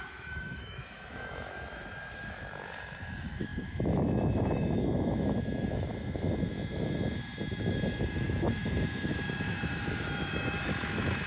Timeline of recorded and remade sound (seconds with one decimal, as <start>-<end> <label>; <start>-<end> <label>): 0.0-11.3 remade